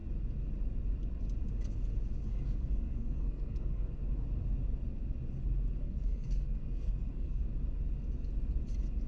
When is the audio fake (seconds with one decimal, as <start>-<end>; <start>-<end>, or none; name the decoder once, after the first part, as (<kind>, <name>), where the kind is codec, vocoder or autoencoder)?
2.3-4.0 (codec, SNAC); 5.8-7.4